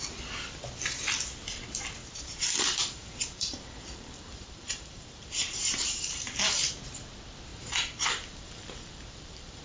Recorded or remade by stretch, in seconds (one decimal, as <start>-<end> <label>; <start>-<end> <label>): 0.0-2.0 recorded; 2.0-6.7 remade; 6.7-7.5 recorded; 7.5-9.6 remade